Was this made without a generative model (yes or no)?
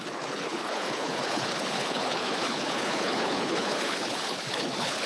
no